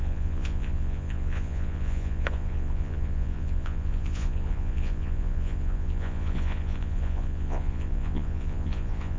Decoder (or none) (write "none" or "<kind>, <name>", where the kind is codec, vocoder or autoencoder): vocoder, Vocos